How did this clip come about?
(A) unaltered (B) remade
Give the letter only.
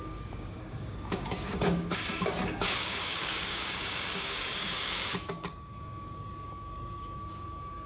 B